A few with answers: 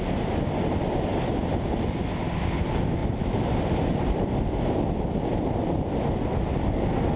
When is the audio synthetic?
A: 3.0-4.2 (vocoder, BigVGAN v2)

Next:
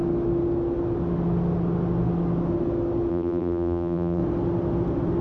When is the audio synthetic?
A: 3.1-4.2 (vocoder, BigVGAN v2)

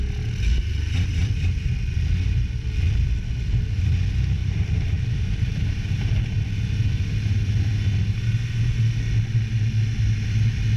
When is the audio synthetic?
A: 1.2-3.9 (vocoder, BigVGAN v2); 4.4-7.5

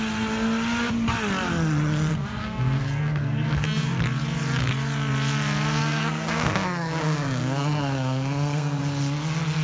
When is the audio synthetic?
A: 2.1-4.0 (codec, SNAC); 5.8-8.8

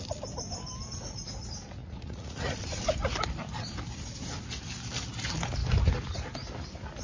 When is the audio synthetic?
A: 1.8-2.8 (vocoder, Vocos)